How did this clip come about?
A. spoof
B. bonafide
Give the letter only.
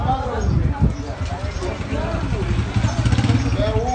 B